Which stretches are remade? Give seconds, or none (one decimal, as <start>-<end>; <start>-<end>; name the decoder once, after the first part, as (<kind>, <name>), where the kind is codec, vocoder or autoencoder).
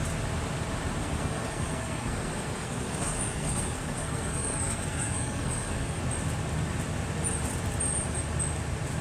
1.0-6.0 (codec, SNAC)